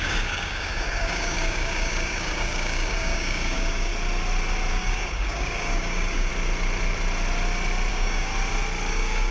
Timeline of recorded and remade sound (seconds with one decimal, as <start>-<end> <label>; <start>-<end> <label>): 0.0-3.9 remade; 3.9-4.7 recorded; 4.7-6.3 remade; 6.3-7.9 recorded; 7.9-8.3 remade; 8.3-8.9 recorded; 8.9-9.3 remade